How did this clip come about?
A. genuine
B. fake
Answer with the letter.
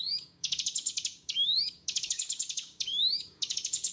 B